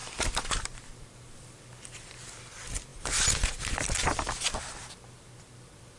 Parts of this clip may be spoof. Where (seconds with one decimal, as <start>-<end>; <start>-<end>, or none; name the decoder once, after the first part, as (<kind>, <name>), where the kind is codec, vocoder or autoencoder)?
0.0-6.0 (vocoder, BigVGAN v2)